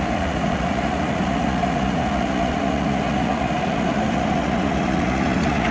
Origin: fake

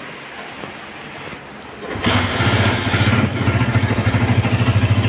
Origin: real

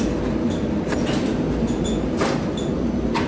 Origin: real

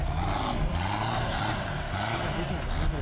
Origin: real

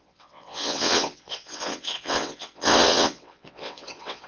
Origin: fake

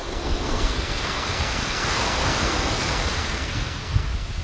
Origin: fake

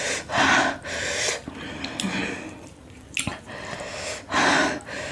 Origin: real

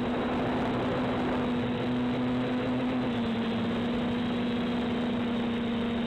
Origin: real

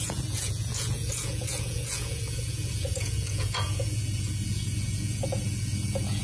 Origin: fake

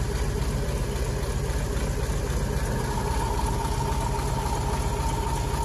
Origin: real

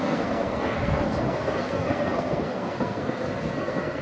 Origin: fake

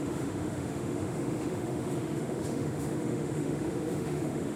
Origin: fake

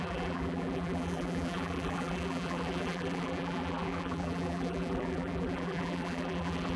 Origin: fake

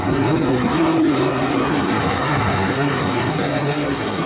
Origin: fake